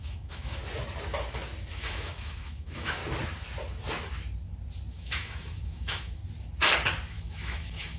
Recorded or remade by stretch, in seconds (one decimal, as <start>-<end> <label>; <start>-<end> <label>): 0.0-0.6 remade; 0.6-1.7 recorded; 1.7-3.0 remade; 3.0-4.9 recorded; 4.9-6.2 remade; 6.2-7.1 recorded; 7.1-8.0 remade